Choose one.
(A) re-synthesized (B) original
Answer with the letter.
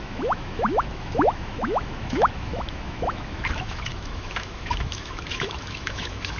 A